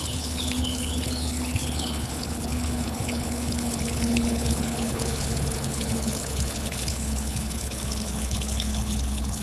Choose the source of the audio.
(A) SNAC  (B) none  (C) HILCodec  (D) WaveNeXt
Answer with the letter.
C